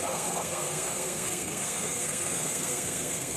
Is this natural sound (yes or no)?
no